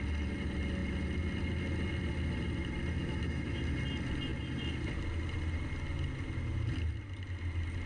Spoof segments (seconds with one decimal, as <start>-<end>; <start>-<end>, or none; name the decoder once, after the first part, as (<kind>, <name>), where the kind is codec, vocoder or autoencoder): 3.0-3.6 (autoencoder, DAC-VAE)